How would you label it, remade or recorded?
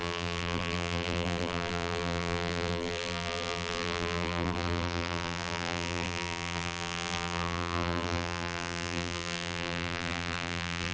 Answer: remade